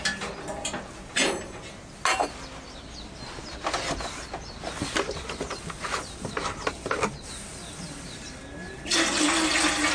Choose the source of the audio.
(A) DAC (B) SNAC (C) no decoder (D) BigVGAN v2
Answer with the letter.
C